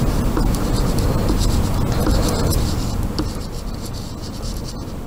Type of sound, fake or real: real